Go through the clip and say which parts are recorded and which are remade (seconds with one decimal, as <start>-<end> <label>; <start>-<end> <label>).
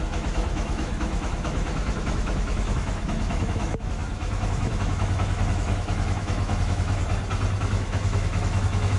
0.0-7.0 remade; 7.0-7.6 recorded; 7.6-9.0 remade